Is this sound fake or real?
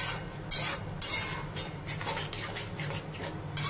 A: real